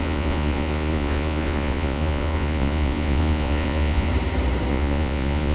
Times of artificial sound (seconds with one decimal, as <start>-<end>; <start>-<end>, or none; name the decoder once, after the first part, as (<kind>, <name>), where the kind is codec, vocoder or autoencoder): 0.0-4.1 (vocoder, Vocos); 4.7-5.5